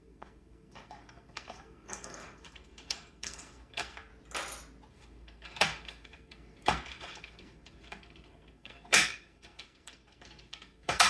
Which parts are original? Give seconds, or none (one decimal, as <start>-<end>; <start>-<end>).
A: 4.1-4.9

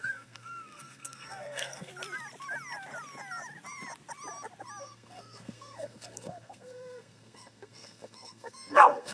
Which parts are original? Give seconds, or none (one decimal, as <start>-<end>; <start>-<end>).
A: 1.9-4.8

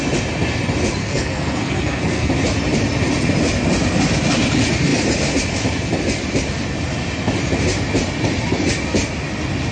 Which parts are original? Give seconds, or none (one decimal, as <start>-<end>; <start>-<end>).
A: 0.0-1.0; 2.3-9.7

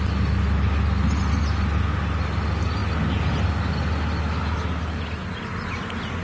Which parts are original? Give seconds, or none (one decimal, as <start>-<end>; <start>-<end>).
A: 0.0-6.2

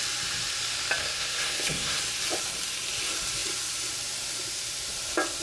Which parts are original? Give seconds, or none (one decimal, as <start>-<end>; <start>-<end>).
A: 0.0-1.0; 2.0-5.4

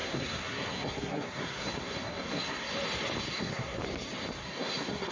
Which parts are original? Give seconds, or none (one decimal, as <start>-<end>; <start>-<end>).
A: 2.7-3.3; 3.8-4.4

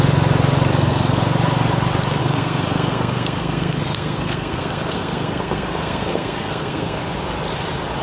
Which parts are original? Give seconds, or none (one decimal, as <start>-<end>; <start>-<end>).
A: 0.0-0.7; 1.2-2.2; 7.0-8.0